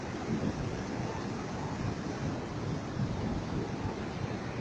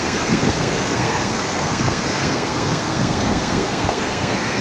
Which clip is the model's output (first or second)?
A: second